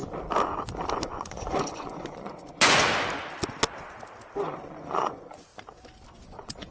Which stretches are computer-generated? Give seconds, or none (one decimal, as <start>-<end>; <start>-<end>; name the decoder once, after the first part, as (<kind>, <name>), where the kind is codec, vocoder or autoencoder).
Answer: 1.1-2.9 (vocoder, Vocos); 4.4-5.5; 6.1-6.7